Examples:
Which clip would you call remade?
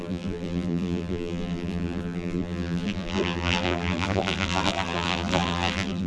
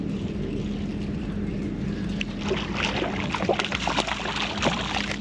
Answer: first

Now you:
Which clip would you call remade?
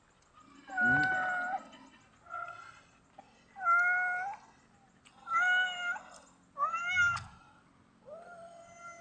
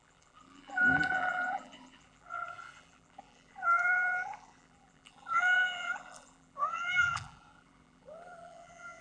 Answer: second